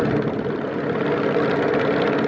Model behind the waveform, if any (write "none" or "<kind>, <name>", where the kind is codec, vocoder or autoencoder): none